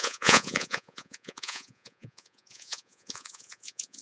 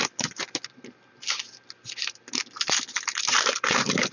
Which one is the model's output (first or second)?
first